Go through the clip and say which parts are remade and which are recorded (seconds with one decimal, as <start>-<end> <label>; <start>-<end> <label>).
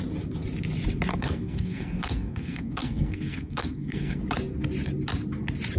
0.0-1.1 recorded; 1.1-4.2 remade; 4.2-5.8 recorded